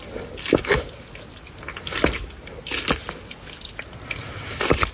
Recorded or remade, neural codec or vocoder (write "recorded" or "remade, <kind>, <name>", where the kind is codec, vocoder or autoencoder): recorded